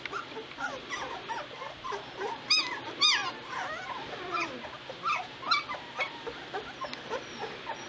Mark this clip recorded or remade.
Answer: recorded